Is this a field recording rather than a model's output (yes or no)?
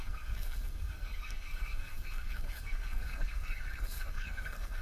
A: no